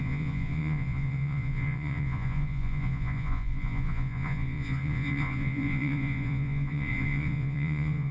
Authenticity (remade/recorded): remade